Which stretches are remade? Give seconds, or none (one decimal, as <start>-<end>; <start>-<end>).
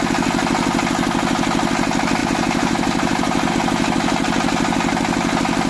2.2-3.5